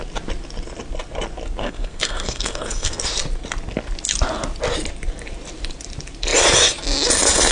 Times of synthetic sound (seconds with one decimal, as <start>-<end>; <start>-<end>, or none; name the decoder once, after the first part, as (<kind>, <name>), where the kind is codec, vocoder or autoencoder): 1.6-3.0 (codec, SNAC)